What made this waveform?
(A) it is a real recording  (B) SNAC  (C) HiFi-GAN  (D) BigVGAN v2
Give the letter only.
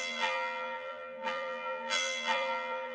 D